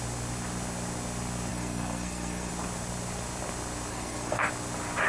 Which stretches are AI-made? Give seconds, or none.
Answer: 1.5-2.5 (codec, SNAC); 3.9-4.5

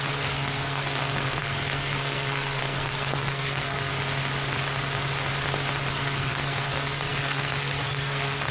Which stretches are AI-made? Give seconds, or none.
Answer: 0.0-3.9 (codec, SNAC); 5.9-8.5

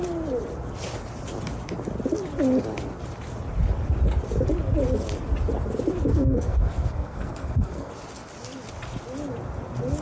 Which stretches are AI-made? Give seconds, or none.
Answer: 6.1-7.9 (codec, SNAC)

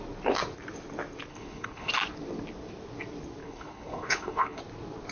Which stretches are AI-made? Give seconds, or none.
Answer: 1.3-1.9 (codec, HILCodec); 3.4-4.6

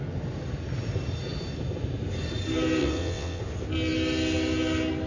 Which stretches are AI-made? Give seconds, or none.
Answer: 2.8-3.4 (vocoder, WaveNeXt)

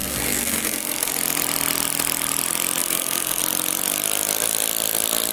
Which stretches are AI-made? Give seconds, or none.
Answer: 0.0-1.1 (codec, SNAC); 2.8-3.4

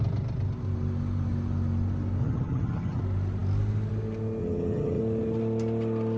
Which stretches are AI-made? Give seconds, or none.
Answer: 2.2-3.0 (vocoder, HiFi-GAN); 4.4-5.0